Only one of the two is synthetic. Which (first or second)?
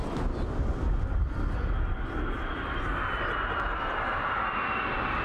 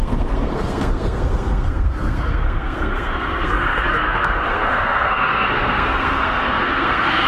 second